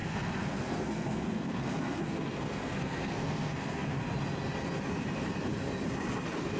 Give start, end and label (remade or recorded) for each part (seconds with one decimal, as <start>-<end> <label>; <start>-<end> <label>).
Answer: 0.0-4.0 remade; 4.0-6.6 recorded